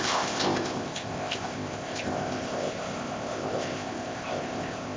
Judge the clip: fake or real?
fake